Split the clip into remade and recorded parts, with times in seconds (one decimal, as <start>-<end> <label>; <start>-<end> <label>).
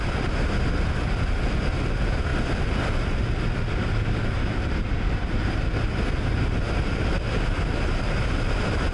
0.0-8.9 recorded